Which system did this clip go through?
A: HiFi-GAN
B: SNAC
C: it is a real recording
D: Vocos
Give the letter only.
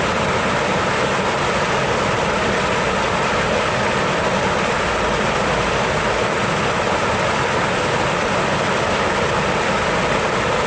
C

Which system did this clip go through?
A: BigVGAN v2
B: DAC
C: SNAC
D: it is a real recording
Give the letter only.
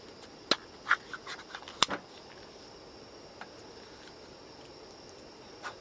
D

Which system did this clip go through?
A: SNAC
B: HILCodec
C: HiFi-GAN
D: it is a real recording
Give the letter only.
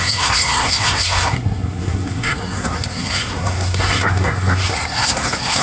A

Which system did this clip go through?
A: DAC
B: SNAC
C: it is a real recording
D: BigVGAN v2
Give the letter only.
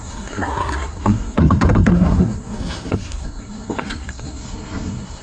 B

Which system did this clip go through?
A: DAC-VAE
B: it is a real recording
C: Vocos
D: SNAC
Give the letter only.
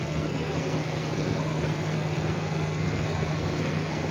D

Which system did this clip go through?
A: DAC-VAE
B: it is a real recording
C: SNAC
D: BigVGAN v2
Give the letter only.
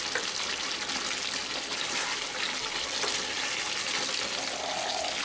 B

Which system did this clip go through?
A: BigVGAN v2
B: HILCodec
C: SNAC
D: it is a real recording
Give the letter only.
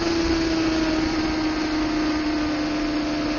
D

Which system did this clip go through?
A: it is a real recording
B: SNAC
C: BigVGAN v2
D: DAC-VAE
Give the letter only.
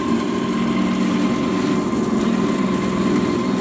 A